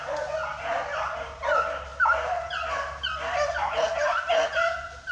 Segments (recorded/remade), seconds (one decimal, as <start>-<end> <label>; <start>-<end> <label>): 0.0-5.1 recorded